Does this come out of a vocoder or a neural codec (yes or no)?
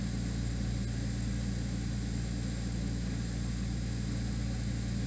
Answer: no